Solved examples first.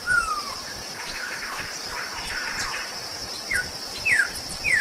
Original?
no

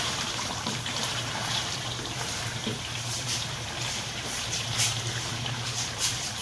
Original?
no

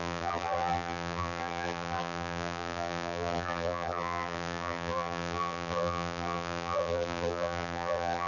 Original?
no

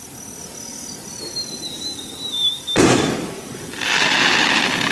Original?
yes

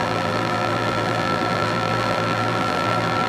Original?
no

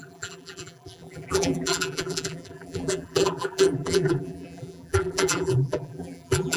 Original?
no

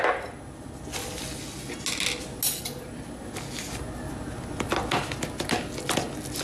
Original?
yes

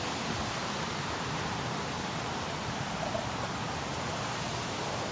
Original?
no